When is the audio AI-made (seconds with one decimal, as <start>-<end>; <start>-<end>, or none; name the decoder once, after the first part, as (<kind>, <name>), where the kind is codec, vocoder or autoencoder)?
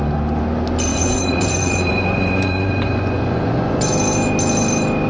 0.9-3.9 (vocoder, Vocos)